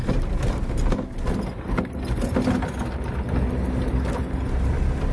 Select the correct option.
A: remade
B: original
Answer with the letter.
B